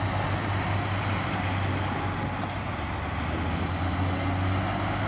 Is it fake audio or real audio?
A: real